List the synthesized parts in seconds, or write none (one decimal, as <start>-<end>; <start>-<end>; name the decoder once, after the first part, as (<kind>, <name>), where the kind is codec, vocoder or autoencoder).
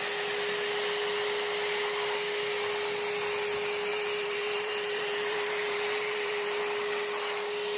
3.9-6.6 (vocoder, BigVGAN v2)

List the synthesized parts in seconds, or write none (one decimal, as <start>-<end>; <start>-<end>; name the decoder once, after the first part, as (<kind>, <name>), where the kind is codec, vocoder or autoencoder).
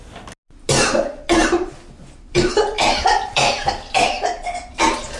1.4-4.5 (vocoder, BigVGAN v2)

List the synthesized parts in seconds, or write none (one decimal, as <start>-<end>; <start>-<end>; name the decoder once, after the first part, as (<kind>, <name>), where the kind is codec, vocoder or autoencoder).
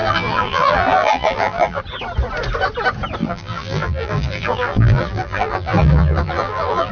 0.0-1.8 (vocoder, BigVGAN v2); 3.2-6.9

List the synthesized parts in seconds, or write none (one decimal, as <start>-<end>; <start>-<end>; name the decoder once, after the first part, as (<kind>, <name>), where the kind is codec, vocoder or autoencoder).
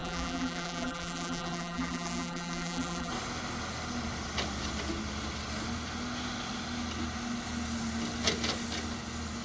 0.0-3.1 (vocoder, BigVGAN v2)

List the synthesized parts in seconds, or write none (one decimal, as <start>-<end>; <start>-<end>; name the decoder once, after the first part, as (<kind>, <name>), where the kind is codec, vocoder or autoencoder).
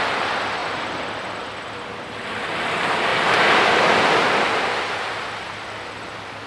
0.6-2.0 (vocoder, BigVGAN v2)